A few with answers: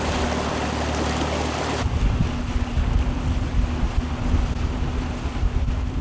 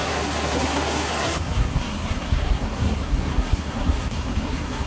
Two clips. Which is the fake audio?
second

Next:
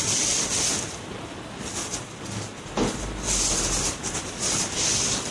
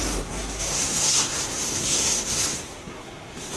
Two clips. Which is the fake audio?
second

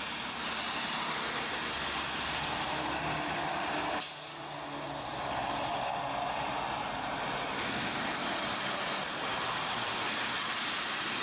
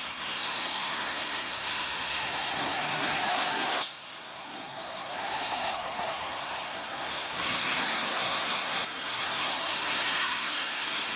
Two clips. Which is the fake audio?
second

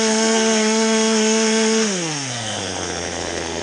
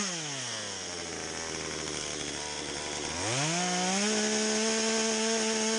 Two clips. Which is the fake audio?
first